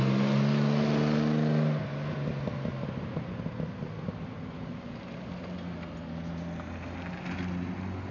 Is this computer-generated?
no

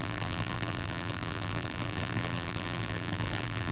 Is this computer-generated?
yes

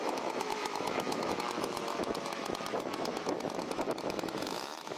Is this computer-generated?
yes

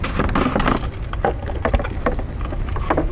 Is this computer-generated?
no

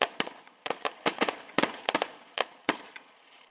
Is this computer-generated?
yes